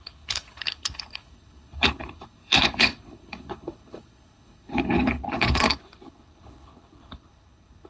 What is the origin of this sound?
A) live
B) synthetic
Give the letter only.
B